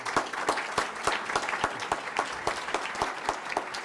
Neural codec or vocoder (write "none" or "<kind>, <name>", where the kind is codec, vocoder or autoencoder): none